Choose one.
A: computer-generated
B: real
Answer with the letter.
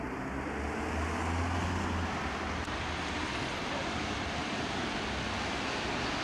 B